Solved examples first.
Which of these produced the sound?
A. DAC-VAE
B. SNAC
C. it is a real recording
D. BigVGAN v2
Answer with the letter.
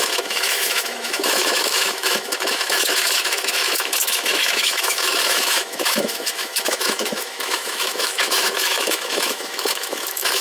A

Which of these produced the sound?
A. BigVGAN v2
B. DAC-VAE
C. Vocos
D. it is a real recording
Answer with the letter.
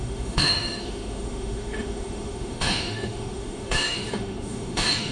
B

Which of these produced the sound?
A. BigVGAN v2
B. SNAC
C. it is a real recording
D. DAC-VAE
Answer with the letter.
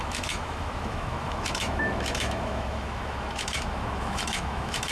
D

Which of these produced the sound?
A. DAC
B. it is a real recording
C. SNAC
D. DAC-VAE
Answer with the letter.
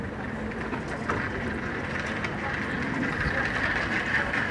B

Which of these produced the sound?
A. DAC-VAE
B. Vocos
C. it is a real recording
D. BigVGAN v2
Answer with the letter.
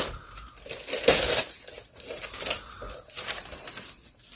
C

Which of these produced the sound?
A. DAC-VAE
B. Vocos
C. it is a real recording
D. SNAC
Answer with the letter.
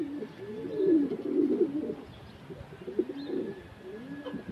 C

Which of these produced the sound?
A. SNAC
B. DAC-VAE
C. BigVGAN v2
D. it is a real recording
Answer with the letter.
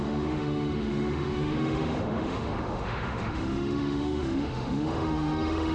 B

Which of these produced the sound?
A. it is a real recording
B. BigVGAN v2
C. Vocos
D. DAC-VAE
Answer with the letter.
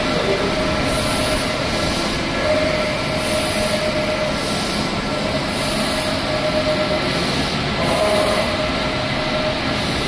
A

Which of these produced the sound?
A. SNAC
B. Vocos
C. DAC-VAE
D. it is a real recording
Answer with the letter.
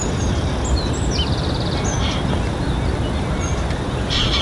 D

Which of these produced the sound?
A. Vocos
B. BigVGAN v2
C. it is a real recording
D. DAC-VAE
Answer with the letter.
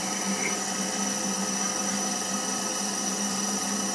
C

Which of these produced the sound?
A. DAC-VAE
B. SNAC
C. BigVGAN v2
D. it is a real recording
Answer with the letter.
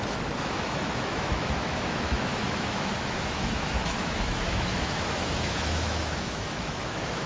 A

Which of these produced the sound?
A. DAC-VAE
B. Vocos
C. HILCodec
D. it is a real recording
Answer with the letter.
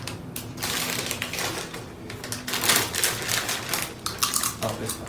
D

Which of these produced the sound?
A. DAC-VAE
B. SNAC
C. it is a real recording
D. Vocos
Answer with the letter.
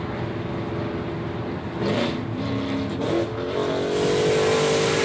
C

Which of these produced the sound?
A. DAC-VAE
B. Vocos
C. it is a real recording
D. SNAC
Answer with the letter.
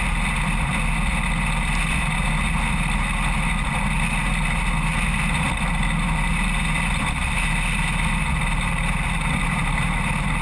C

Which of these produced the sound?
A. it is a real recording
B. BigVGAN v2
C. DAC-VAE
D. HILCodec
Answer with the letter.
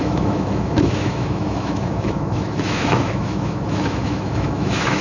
C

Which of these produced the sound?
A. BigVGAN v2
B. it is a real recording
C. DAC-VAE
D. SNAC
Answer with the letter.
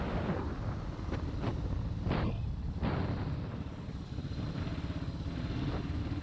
B